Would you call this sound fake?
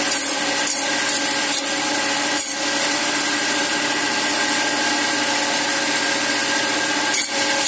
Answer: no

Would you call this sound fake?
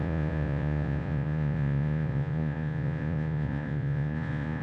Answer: yes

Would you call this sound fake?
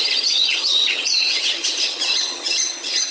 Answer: yes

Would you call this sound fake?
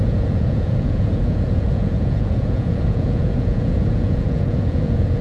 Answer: yes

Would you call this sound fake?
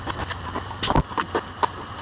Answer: no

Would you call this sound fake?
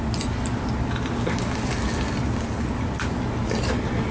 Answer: no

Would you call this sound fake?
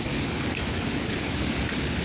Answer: yes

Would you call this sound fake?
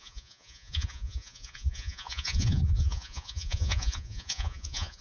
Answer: yes